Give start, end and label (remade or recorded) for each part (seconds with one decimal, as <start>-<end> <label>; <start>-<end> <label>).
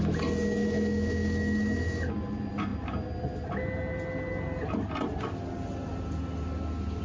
0.0-0.6 recorded; 0.6-2.1 remade; 2.1-7.0 recorded